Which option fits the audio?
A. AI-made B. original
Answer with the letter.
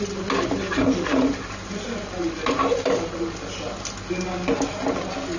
B